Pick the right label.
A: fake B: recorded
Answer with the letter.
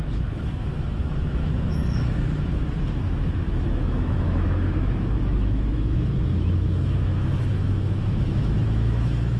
A